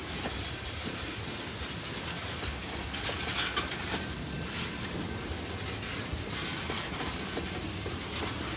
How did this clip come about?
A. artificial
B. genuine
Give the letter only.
B